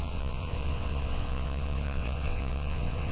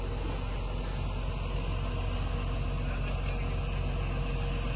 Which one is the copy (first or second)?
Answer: first